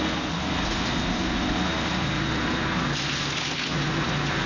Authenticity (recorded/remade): recorded